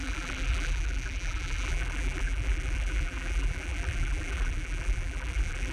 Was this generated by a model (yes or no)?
yes